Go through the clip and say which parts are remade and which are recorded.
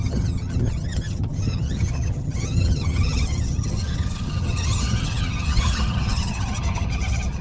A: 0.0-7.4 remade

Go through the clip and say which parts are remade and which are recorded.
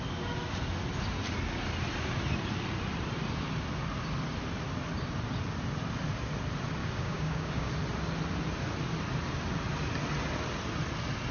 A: 0.0-6.8 recorded; 6.8-7.7 remade; 7.7-11.3 recorded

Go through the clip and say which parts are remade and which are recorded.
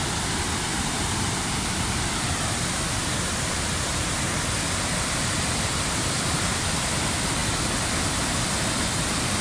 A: 0.0-0.7 recorded; 0.7-5.8 remade; 5.8-9.4 recorded